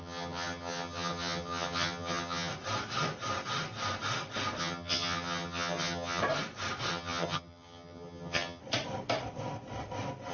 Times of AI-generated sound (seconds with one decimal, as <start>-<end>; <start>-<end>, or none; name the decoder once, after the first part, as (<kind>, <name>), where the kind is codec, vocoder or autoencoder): 0.0-2.5 (vocoder, HiFi-GAN); 4.6-6.2; 6.9-8.6